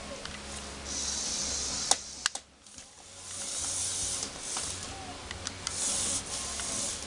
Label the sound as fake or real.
real